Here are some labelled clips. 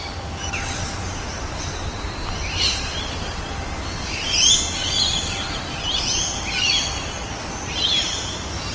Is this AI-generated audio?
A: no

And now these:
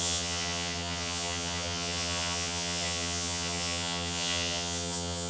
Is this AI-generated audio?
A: yes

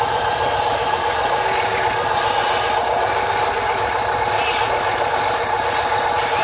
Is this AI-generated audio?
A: no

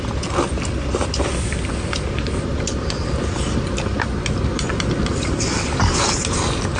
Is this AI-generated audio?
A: no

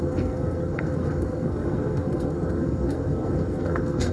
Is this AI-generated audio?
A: yes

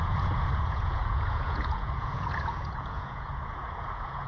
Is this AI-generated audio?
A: yes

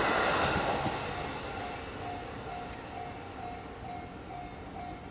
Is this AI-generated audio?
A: no